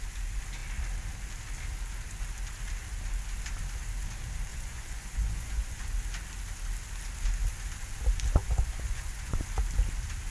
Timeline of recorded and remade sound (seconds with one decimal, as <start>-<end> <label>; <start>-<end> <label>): 0.0-4.5 recorded; 4.5-5.8 remade; 5.8-8.4 recorded; 8.4-9.4 remade; 9.4-10.3 recorded